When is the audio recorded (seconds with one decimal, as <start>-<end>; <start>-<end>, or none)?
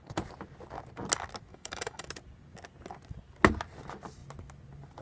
0.0-1.5; 2.1-5.0